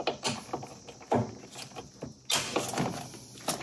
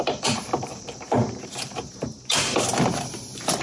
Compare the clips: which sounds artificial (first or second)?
second